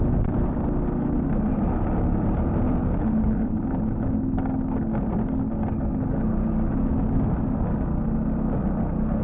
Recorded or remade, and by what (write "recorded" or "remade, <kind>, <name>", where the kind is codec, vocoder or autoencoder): recorded